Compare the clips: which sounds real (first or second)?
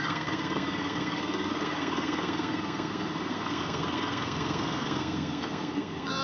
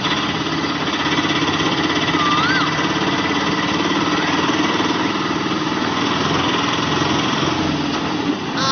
second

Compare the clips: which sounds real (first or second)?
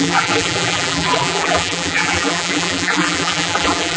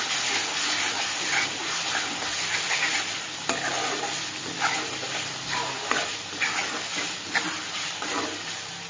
second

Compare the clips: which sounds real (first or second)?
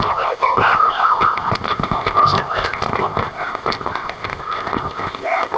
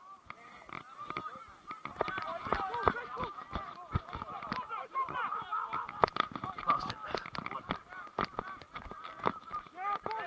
second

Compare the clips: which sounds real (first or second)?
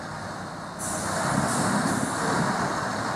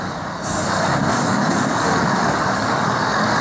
first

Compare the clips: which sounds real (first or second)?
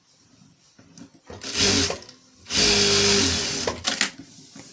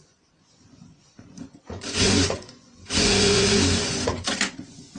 first